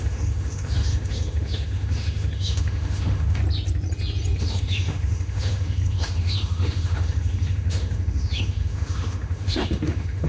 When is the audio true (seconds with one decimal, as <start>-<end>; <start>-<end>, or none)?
3.4-4.4